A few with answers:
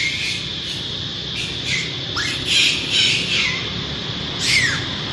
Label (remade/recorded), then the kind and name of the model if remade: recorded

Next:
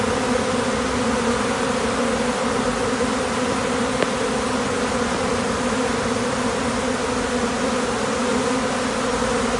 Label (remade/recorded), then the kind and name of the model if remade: recorded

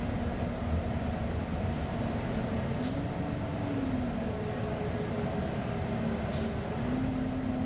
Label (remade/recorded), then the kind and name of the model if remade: recorded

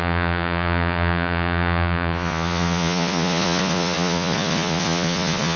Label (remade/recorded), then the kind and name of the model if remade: remade, vocoder, Vocos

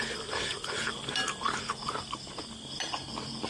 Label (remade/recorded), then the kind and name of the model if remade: remade, vocoder, BigVGAN v2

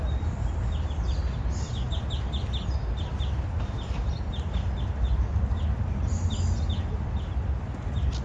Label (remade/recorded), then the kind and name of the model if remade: recorded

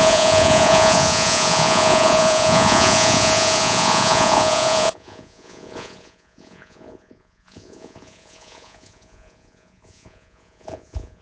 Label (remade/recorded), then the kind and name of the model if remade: remade, vocoder, Vocos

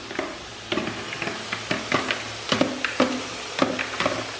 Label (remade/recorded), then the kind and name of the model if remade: recorded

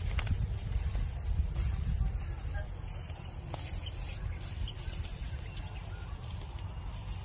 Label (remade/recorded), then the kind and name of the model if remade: recorded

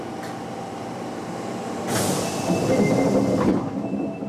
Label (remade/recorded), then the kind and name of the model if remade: recorded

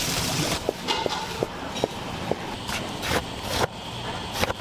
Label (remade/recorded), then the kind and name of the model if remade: remade, vocoder, BigVGAN v2